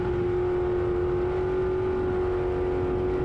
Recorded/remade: recorded